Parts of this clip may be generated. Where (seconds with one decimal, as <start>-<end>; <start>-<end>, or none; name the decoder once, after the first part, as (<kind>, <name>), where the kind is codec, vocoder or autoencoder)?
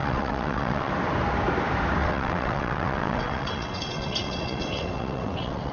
0.0-0.9 (vocoder, WaveNeXt); 2.0-5.7